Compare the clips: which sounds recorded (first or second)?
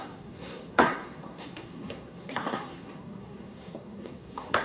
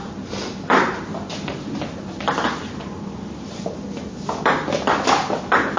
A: second